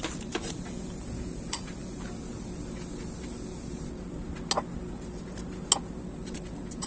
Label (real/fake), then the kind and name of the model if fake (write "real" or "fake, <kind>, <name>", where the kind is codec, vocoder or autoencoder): real